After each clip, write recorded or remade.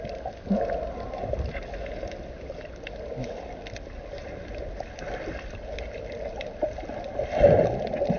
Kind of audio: recorded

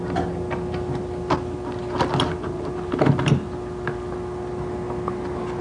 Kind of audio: recorded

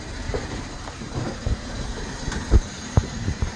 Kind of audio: remade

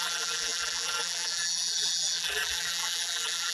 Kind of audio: remade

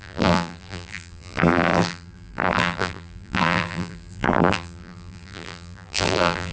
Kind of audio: remade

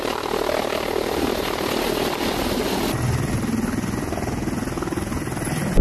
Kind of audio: recorded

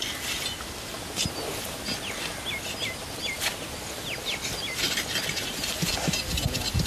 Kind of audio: recorded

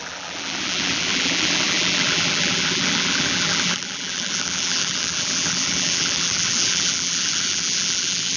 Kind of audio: remade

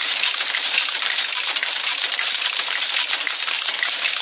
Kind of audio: remade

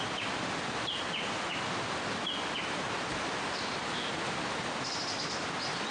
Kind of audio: recorded